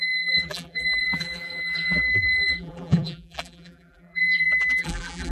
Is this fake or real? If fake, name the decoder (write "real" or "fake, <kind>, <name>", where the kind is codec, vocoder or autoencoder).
fake, vocoder, BigVGAN v2